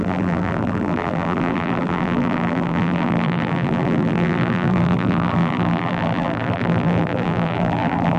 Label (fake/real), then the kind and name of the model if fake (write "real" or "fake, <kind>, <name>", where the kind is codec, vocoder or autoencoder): fake, vocoder, BigVGAN v2